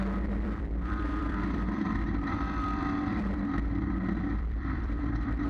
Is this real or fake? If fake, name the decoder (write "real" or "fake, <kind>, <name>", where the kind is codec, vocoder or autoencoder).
fake, vocoder, BigVGAN v2